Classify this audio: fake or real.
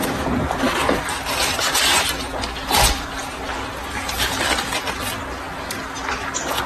real